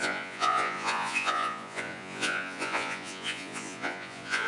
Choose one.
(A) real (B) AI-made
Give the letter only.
B